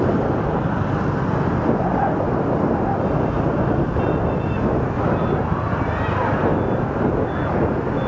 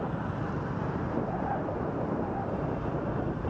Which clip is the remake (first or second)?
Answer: second